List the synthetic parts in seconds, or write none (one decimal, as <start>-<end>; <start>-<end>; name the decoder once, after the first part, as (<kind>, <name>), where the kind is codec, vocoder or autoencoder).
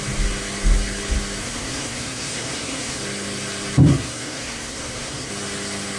1.4-3.0 (codec, SNAC); 3.9-5.3